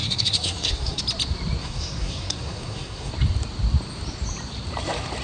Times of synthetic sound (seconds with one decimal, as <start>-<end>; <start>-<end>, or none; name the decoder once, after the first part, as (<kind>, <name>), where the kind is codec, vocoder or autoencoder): 0.0-1.0 (codec, SNAC); 1.6-3.1